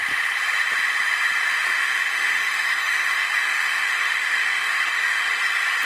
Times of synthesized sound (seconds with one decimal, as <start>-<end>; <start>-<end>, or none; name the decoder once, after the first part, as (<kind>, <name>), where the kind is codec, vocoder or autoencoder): 1.8-5.3 (autoencoder, DAC-VAE)